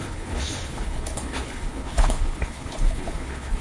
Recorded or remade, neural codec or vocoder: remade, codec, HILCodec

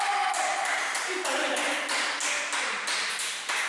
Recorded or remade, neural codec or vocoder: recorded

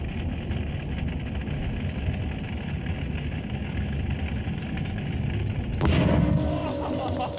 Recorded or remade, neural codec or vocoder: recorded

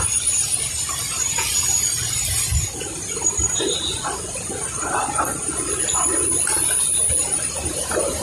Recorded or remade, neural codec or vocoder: recorded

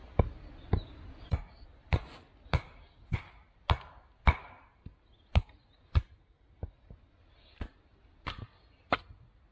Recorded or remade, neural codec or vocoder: recorded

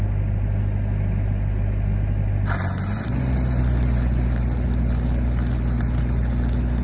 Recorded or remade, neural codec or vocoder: recorded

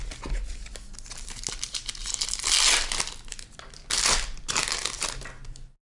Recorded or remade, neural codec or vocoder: recorded